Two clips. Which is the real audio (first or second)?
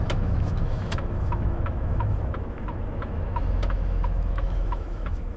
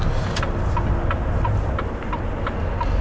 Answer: second